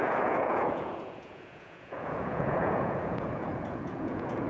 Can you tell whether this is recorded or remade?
remade